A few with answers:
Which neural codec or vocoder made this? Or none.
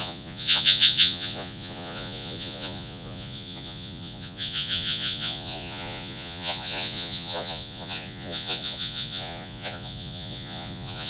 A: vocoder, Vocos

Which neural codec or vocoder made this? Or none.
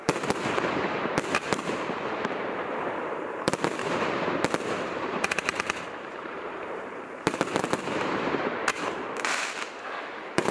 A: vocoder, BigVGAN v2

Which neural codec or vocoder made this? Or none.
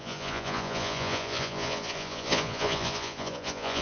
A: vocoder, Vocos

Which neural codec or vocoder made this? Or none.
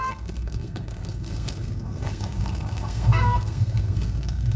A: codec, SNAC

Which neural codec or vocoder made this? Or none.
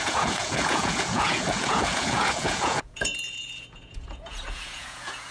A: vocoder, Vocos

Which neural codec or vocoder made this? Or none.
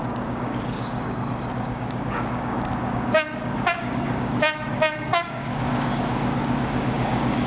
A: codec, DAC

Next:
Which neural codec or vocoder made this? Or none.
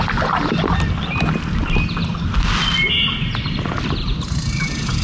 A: none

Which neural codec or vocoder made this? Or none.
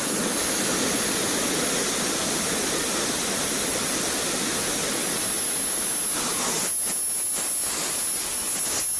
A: none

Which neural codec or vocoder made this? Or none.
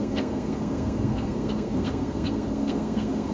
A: codec, SNAC